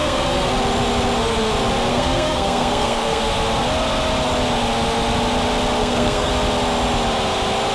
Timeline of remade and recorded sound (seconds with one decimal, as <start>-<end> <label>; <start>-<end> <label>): 0.0-0.5 remade; 0.5-1.9 recorded; 1.9-3.2 remade; 3.2-5.8 recorded; 5.8-6.3 remade; 6.3-7.7 recorded